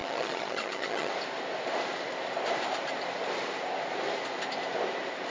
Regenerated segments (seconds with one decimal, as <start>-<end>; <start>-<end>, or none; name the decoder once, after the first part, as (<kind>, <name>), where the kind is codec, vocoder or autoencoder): 0.0-1.1 (vocoder, HiFi-GAN)